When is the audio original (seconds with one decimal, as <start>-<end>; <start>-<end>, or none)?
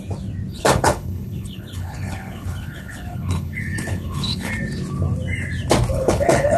0.0-0.5; 4.5-5.9